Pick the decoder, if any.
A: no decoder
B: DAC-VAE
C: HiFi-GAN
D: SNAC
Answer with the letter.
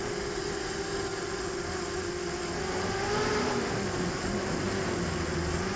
A